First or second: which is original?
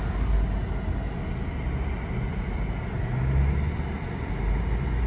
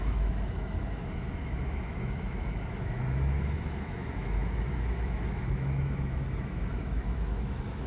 first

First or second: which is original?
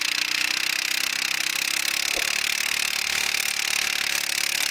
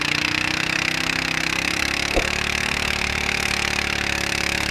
first